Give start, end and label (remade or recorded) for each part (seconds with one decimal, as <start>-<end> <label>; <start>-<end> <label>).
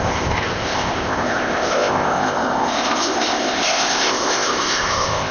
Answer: 0.0-5.3 remade